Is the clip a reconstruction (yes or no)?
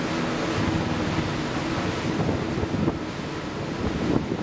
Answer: no